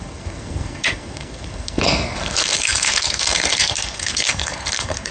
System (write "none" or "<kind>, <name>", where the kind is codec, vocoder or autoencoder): codec, SNAC